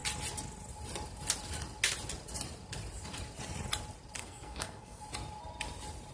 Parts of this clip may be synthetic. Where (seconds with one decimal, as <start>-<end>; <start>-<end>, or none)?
4.2-5.0